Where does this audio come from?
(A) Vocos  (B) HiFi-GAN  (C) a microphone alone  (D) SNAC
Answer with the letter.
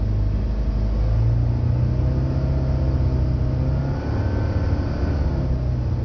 C